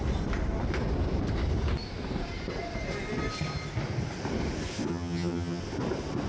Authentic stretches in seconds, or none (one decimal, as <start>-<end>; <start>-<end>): 0.0-4.9; 5.6-6.3